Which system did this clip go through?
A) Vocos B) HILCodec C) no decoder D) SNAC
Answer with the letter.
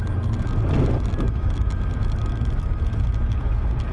C